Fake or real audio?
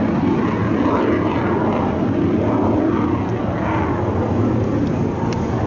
real